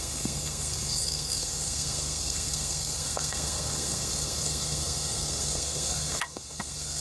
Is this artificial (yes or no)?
yes